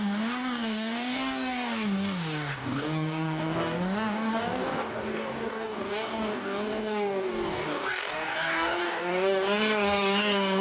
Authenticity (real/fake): fake